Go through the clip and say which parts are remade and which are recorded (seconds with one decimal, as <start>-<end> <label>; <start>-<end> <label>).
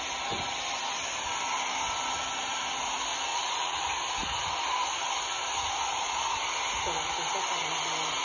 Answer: 0.0-3.3 recorded; 3.3-3.8 remade; 3.8-8.2 recorded